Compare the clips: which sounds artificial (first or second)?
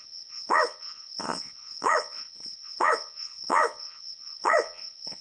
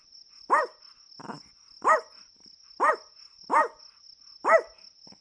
first